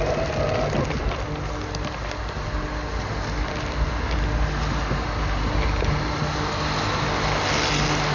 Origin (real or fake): real